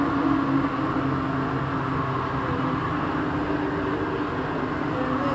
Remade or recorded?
recorded